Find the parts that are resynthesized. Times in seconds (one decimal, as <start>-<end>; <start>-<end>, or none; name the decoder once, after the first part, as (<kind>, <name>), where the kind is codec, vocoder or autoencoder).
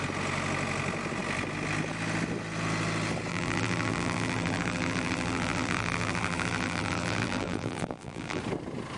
3.3-8.4 (vocoder, BigVGAN v2)